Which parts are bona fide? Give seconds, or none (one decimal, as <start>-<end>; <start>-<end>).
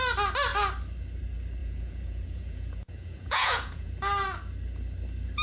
0.0-1.6; 3.9-5.4